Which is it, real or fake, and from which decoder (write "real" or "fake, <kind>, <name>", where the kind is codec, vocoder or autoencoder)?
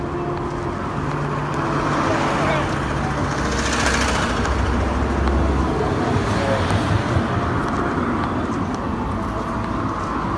real